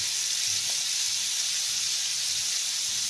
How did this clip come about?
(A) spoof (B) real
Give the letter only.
B